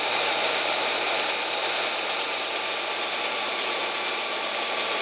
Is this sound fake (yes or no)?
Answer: no